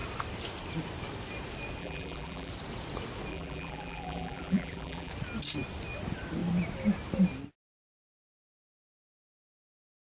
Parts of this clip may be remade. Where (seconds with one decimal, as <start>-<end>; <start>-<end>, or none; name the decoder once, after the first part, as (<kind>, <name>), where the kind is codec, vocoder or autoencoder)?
1.8-2.5 (vocoder, BigVGAN v2); 3.3-5.1